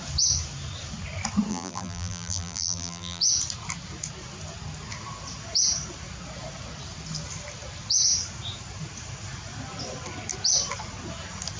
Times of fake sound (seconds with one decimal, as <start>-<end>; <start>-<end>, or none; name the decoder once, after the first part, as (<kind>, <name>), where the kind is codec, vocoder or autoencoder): 1.5-3.2 (vocoder, BigVGAN v2)